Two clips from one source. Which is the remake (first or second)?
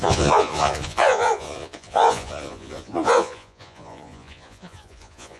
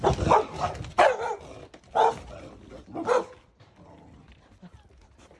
first